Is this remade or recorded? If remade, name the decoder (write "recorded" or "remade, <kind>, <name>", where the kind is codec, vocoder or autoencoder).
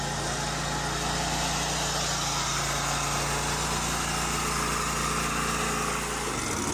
recorded